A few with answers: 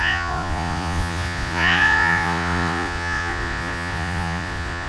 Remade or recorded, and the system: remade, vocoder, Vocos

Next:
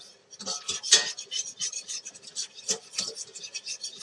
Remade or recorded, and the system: remade, vocoder, BigVGAN v2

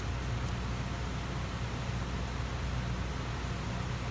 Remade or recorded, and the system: recorded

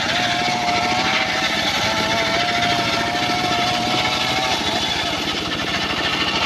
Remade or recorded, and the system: recorded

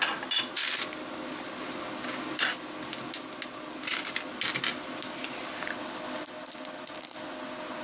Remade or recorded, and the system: recorded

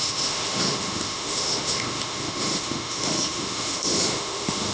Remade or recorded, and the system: remade, autoencoder, DAC-VAE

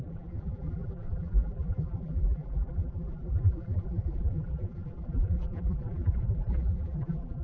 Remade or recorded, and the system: remade, vocoder, BigVGAN v2